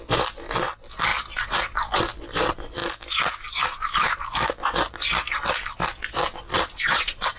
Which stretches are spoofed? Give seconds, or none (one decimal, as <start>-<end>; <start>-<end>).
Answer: 6.5-7.4